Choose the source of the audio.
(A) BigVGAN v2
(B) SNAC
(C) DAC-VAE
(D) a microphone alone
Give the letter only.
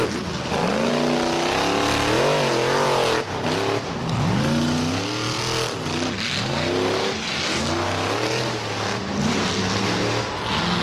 D